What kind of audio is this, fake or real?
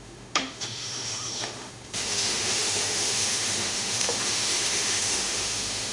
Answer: fake